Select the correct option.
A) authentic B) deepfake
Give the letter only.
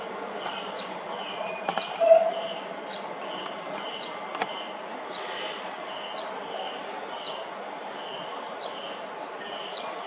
A